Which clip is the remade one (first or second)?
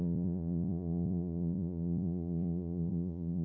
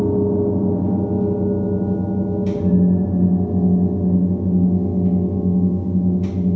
first